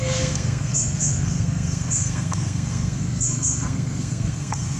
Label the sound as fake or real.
fake